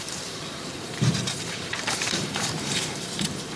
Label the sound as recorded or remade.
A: remade